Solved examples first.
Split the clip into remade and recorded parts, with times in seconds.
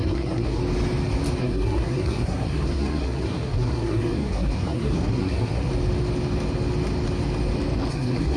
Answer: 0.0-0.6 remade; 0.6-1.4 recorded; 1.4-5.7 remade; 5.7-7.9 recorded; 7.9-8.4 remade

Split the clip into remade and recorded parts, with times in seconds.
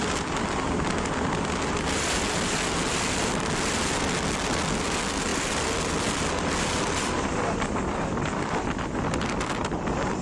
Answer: 0.0-10.2 recorded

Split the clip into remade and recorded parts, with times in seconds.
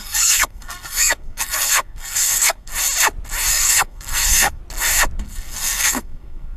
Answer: 0.0-2.7 remade; 2.7-3.5 recorded; 3.5-4.6 remade; 4.6-5.2 recorded; 5.2-6.6 remade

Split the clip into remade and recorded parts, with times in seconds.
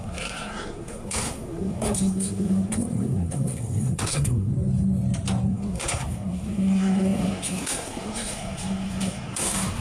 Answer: 0.0-4.5 remade; 4.5-5.5 recorded; 5.5-9.8 remade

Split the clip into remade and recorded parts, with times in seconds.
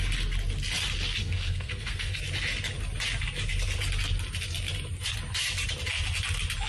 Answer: 0.0-1.2 recorded; 1.2-2.2 remade; 2.2-6.7 recorded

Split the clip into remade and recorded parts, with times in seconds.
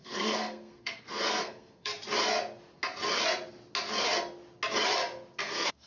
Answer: 0.0-1.9 remade; 1.9-5.4 recorded; 5.4-5.9 remade